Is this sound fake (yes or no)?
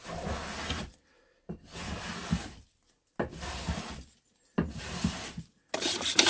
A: no